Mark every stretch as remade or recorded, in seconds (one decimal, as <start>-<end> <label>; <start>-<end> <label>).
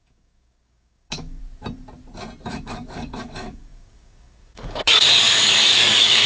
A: 0.0-1.4 remade; 1.4-2.5 recorded; 2.5-6.3 remade